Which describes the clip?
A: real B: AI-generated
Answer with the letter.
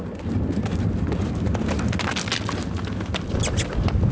A